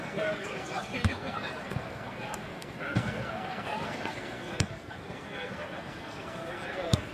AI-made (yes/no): yes